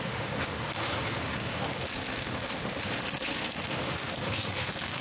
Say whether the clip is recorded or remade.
remade